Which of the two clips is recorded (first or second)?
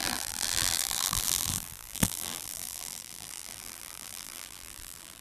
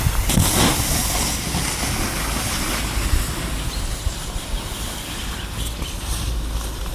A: second